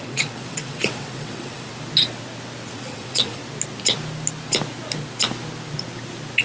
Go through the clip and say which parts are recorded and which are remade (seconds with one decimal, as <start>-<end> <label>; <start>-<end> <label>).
0.0-1.7 remade; 1.7-2.7 recorded; 2.7-3.4 remade; 3.4-6.4 recorded